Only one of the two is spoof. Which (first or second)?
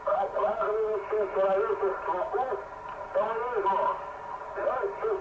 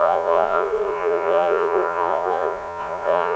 second